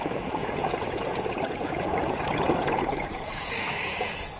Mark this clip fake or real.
fake